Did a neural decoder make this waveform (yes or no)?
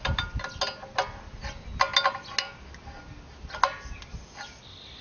no